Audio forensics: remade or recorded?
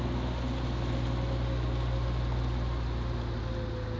recorded